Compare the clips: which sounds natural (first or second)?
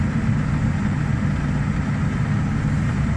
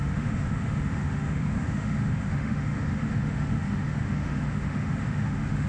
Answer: first